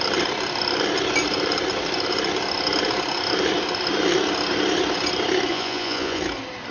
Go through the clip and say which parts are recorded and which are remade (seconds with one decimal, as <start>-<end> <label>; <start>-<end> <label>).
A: 0.0-5.5 recorded; 5.5-6.2 remade; 6.2-6.7 recorded